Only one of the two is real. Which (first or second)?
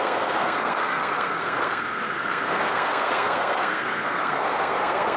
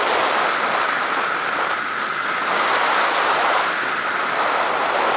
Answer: second